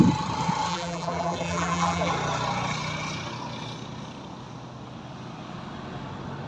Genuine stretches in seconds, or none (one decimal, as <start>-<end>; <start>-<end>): 0.0-0.7; 2.1-6.5